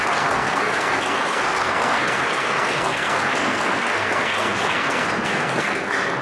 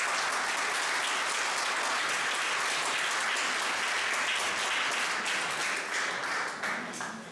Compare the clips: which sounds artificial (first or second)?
first